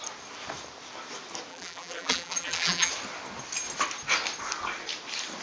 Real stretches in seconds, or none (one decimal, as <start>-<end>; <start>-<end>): 0.0-1.5; 2.9-5.4